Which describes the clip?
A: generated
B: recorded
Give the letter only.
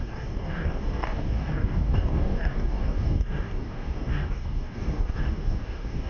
A